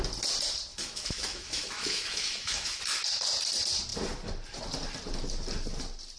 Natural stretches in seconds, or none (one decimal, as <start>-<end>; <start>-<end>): 0.0-0.7; 2.8-6.2